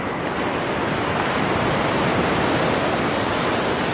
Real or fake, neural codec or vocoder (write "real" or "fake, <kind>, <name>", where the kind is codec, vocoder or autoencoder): real